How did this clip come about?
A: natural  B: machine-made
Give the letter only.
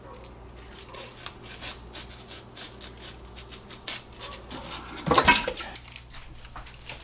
A